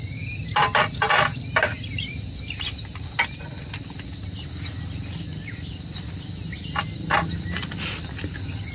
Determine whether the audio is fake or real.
real